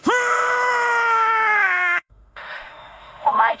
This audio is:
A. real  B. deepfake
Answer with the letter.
B